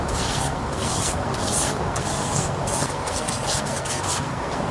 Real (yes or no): no